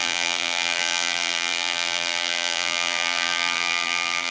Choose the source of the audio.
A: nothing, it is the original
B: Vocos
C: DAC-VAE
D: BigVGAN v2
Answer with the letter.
D